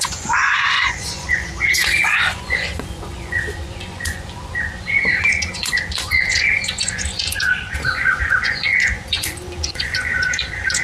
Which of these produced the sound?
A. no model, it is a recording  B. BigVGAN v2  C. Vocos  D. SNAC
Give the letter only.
C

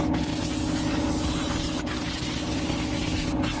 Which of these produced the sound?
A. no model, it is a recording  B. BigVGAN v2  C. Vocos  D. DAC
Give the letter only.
A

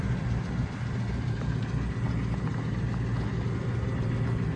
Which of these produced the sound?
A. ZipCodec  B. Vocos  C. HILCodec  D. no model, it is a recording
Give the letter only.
D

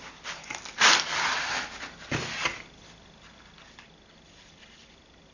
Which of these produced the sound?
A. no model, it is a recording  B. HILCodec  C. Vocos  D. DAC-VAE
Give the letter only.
A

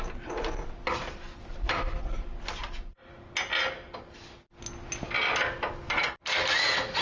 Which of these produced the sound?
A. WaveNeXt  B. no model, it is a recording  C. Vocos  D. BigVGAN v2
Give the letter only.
B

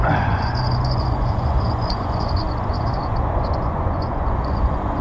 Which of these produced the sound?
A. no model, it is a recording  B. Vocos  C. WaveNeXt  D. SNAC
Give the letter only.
B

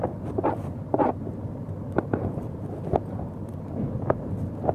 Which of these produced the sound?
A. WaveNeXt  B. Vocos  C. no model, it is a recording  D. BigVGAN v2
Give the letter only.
C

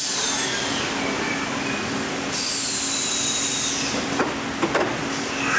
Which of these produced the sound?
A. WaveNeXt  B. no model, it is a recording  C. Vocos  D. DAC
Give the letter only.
B